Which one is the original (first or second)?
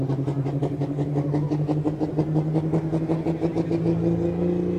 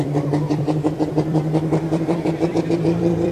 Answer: first